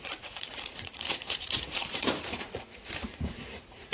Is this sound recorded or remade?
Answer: remade